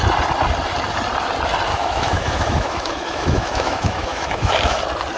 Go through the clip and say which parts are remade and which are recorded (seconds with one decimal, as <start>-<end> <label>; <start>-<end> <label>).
0.0-1.7 recorded; 1.7-4.8 remade; 4.8-5.2 recorded